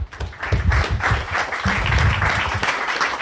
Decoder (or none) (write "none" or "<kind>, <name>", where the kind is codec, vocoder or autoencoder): vocoder, BigVGAN v2